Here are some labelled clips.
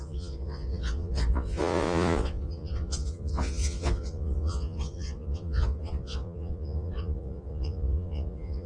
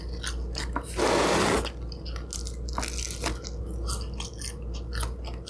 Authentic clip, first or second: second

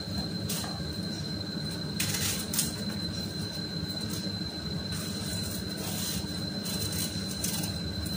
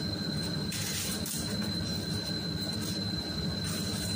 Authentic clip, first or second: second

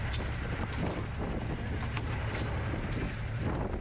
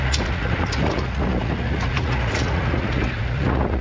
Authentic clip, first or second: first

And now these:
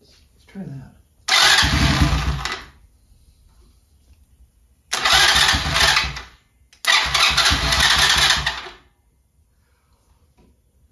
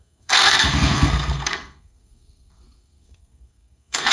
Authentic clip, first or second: first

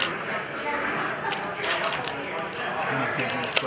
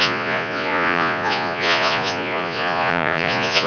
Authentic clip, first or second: first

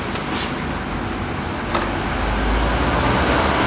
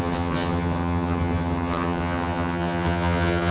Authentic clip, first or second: first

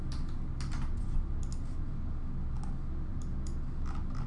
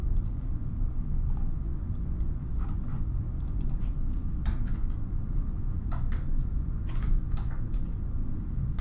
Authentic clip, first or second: first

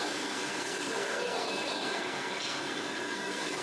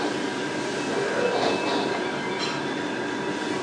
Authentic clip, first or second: second